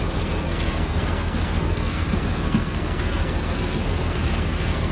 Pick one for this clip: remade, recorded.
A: remade